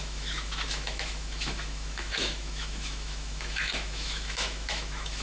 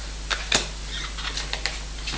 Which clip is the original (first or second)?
second